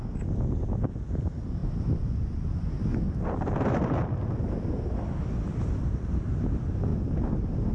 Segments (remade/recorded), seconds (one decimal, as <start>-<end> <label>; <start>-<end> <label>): 0.0-7.7 recorded